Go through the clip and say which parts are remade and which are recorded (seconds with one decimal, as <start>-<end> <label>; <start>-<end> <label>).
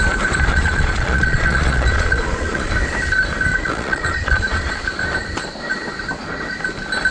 0.0-0.5 recorded; 0.5-2.7 remade; 2.7-3.5 recorded; 3.5-4.7 remade; 4.7-7.1 recorded